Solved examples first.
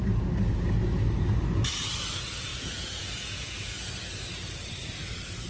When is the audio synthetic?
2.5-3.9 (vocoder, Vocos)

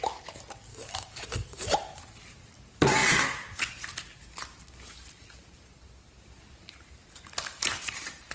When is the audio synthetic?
0.7-1.7 (codec, DAC)

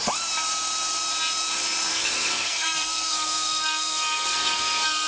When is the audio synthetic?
1.9-5.1 (codec, SNAC)

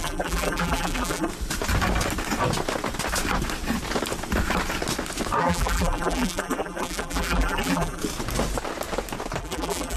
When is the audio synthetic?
0.0-1.3 (vocoder, BigVGAN v2); 5.4-8.0; 9.4-10.0

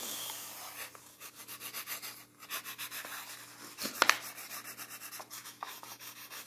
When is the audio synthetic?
0.0-0.5 (codec, DAC); 1.0-1.4; 5.3-6.5

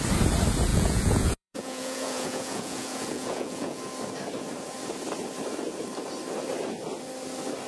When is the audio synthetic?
0.7-3.8 (vocoder, Vocos)

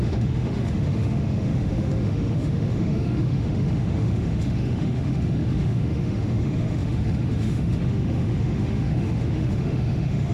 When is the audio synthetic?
0.0-10.3 (autoencoder, DAC-VAE)